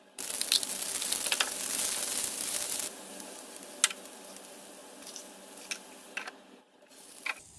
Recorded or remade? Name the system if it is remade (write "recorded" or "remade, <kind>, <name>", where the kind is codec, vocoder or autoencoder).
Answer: recorded